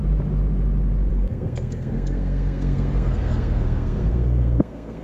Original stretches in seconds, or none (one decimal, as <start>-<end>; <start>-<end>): 0.0-1.1